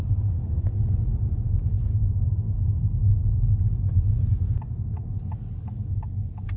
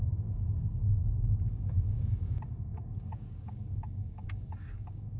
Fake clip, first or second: second